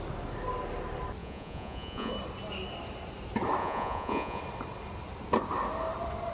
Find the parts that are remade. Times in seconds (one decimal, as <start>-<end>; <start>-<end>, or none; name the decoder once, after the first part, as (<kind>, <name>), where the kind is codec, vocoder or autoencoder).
1.2-2.1 (vocoder, Vocos); 3.6-4.4